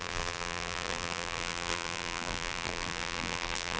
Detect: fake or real fake